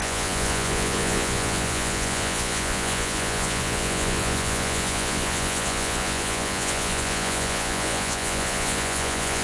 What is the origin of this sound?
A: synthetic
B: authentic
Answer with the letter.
A